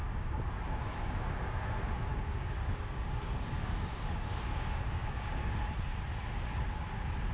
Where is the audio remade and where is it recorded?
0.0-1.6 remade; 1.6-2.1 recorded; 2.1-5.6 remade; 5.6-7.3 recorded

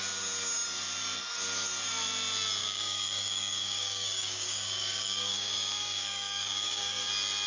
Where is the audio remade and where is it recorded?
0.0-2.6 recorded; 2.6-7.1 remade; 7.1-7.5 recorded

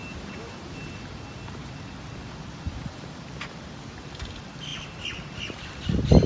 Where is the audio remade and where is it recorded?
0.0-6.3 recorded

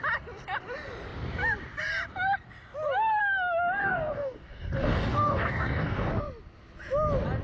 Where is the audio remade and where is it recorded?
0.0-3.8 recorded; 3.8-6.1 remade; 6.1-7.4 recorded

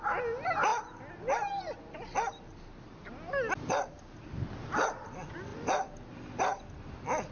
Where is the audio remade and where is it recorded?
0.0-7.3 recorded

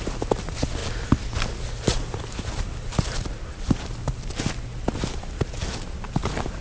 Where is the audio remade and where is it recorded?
0.0-6.6 recorded

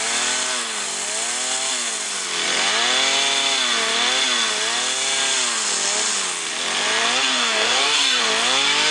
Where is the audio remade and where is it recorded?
0.0-7.3 recorded; 7.3-8.2 remade; 8.2-8.9 recorded

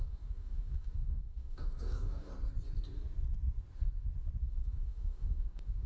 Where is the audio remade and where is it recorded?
0.0-2.3 remade; 2.3-4.4 recorded; 4.4-5.9 remade